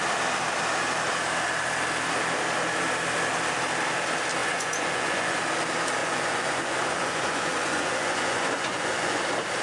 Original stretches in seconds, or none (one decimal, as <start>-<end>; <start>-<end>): 0.0-4.4; 5.4-6.0; 9.2-9.6